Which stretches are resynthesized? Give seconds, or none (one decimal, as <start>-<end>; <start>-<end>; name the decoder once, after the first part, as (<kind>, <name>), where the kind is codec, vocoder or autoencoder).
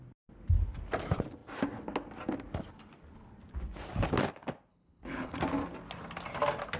4.7-5.4 (codec, HILCodec)